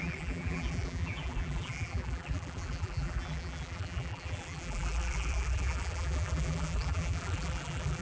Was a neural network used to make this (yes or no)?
yes